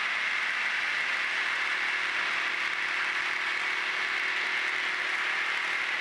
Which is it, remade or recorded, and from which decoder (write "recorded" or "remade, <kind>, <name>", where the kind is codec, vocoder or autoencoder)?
recorded